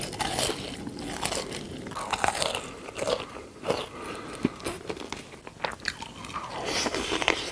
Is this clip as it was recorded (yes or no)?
yes